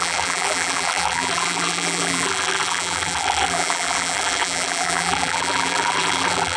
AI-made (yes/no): yes